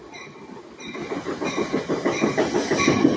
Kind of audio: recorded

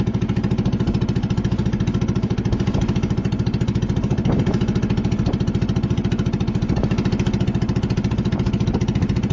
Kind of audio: remade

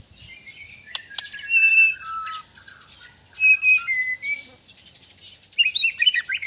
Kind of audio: recorded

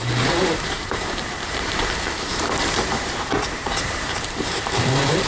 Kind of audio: remade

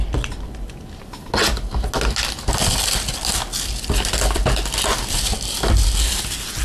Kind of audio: recorded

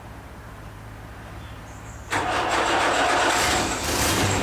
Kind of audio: remade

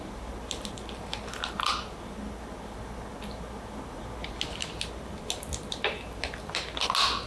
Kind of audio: recorded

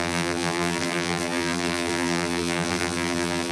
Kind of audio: remade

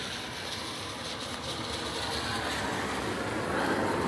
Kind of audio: recorded